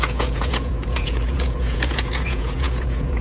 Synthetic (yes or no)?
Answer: yes